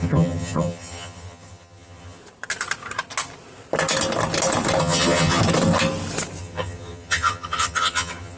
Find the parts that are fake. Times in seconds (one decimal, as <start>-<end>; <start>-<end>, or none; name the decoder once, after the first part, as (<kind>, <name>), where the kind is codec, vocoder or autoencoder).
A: 0.0-2.2 (vocoder, HiFi-GAN); 4.8-5.4; 6.4-8.4